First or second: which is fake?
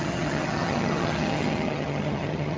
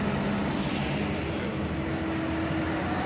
first